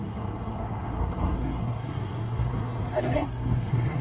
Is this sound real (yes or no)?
no